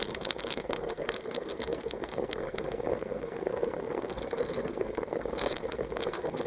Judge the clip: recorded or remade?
remade